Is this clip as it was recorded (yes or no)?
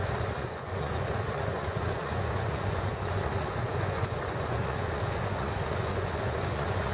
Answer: no